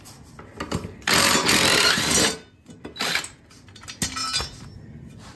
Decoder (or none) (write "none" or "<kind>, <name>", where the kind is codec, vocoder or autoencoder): none